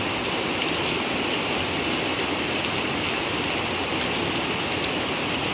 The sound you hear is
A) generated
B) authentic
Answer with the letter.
B